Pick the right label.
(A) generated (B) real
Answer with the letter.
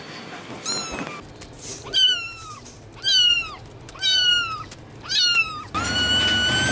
B